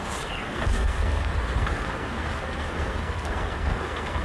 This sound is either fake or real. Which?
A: fake